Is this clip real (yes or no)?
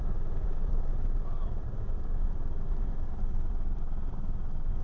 no